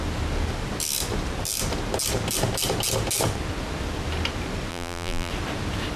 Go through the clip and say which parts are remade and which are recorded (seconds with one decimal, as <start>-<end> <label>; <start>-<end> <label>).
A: 0.0-4.7 recorded; 4.7-5.3 remade; 5.3-6.0 recorded